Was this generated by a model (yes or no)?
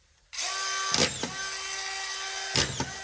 no